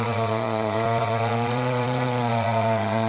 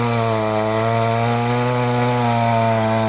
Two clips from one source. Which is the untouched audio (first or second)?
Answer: second